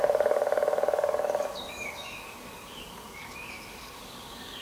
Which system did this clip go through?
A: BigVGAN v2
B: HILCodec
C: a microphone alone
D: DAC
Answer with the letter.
D